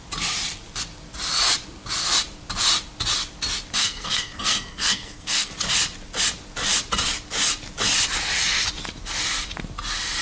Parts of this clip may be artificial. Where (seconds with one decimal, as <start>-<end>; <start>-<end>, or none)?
3.8-5.5